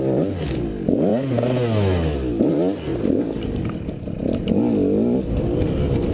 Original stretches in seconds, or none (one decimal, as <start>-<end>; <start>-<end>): 0.0-6.1